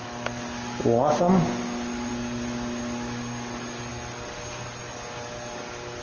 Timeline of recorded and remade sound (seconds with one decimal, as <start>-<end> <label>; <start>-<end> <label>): 0.0-6.0 recorded